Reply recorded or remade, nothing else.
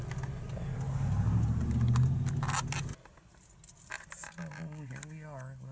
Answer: recorded